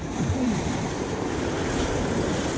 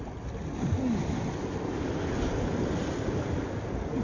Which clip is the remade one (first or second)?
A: first